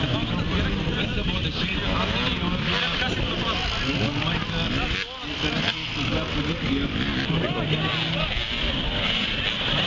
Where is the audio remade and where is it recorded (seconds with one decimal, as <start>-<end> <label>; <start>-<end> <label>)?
0.0-9.9 recorded